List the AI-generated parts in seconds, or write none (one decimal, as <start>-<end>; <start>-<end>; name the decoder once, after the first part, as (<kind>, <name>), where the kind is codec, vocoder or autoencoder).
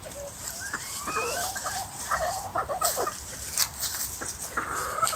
0.0-2.5 (vocoder, BigVGAN v2)